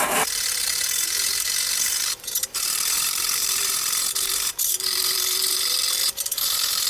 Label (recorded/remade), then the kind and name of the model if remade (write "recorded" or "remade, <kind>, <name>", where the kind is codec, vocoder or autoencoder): remade, vocoder, BigVGAN v2